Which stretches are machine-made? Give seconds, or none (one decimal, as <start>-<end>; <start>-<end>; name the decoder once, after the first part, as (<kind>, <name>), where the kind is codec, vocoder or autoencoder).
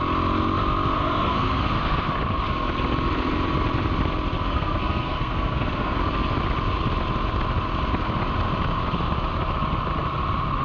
0.9-2.1 (codec, SNAC); 4.5-6.0